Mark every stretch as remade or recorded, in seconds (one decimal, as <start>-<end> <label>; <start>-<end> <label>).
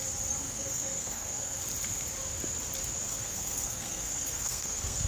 0.0-0.4 recorded; 0.4-1.6 remade; 1.6-3.0 recorded; 3.0-5.1 remade